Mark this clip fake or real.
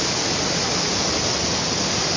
real